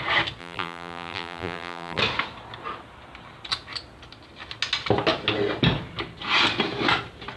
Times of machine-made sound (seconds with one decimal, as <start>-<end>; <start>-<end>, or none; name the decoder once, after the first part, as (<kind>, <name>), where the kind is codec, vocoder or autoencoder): 0.4-2.0 (vocoder, BigVGAN v2)